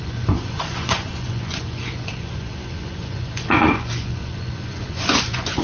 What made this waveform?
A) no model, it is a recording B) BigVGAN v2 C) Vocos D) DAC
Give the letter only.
C